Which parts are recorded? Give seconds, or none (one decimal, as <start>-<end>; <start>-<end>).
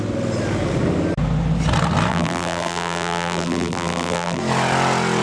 0.0-2.1; 4.4-5.2